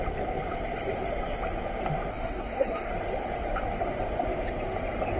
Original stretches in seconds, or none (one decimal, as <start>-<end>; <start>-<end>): 0.0-2.1; 2.9-5.2

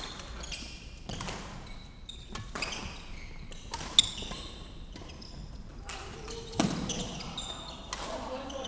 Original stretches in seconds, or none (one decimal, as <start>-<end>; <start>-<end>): 0.0-8.7

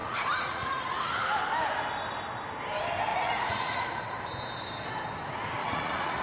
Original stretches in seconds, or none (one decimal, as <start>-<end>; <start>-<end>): 1.1-3.1; 4.0-5.6

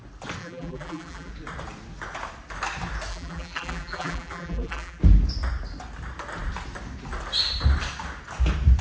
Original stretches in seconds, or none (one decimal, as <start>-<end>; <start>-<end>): 0.0-0.4; 1.3-3.1; 5.0-8.8

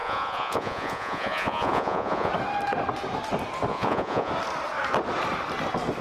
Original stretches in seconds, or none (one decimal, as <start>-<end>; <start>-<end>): 2.3-3.7; 4.3-6.0

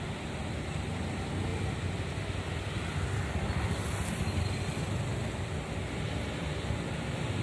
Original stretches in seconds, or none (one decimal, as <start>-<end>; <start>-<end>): 0.0-7.4

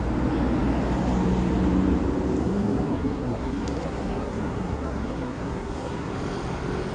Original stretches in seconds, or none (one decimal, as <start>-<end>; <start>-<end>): 0.0-2.4; 6.1-6.9